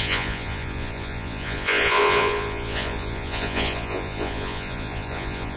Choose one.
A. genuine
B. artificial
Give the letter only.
B